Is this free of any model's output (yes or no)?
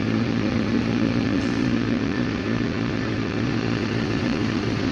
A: no